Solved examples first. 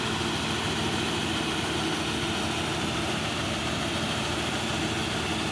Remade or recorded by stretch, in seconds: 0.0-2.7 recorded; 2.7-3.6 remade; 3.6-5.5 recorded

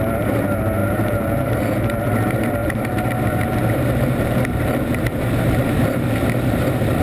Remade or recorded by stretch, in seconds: 0.0-0.8 recorded; 0.8-1.6 remade; 1.6-2.6 recorded; 2.6-7.0 remade

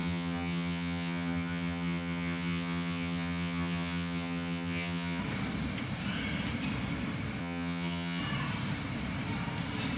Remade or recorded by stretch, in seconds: 0.0-5.2 remade; 5.2-7.4 recorded; 7.4-8.2 remade; 8.2-10.0 recorded